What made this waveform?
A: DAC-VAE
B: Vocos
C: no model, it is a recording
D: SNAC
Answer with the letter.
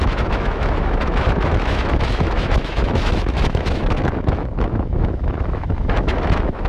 A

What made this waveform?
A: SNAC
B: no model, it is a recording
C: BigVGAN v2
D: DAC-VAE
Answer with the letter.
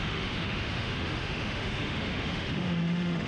D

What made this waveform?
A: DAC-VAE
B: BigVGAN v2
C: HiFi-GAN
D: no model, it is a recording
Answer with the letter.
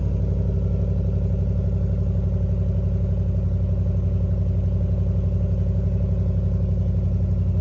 D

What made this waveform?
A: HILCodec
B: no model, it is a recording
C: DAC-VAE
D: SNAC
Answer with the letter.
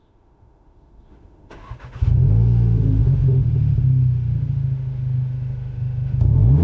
C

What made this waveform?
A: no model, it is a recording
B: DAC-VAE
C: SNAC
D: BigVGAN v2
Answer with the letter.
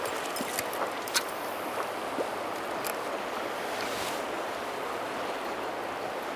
A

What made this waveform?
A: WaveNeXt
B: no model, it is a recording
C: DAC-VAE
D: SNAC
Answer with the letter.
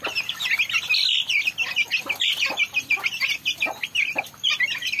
B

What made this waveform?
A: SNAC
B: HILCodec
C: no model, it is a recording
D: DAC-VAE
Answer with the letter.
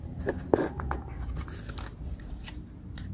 C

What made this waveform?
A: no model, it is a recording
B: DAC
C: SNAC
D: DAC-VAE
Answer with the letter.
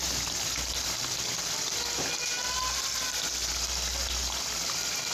A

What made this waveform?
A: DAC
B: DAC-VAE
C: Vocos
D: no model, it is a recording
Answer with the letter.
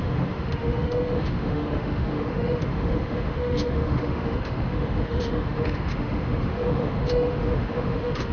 B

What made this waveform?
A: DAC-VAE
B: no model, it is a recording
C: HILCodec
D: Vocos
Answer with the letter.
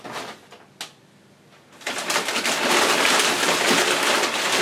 B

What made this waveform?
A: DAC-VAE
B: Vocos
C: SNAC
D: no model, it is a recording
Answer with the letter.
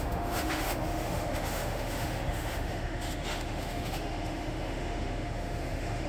A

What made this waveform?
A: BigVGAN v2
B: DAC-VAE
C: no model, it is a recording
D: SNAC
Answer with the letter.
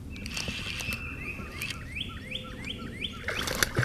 C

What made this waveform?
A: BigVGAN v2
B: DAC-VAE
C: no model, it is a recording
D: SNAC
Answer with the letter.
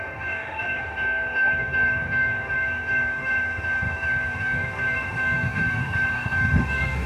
B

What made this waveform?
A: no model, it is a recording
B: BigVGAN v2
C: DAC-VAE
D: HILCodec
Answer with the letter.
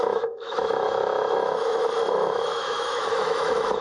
C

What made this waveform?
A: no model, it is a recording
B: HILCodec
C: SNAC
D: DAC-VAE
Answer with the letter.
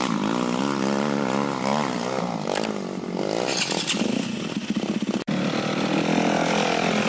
A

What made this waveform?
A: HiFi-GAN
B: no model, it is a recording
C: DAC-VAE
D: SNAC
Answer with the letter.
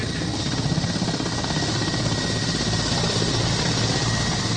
B